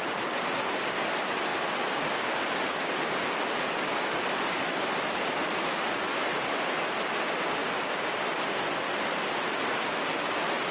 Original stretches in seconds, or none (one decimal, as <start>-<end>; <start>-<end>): 0.0-1.5; 5.7-7.6; 8.2-10.7